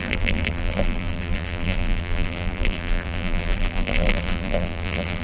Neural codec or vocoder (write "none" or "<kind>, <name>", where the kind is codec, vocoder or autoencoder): vocoder, BigVGAN v2